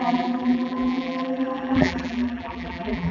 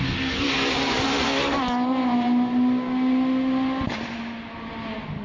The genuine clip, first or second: second